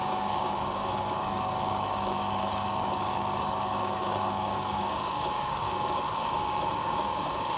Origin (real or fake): fake